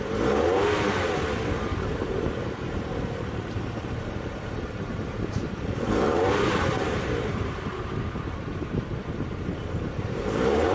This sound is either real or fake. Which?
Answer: fake